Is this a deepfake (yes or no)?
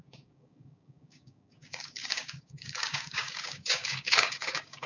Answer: yes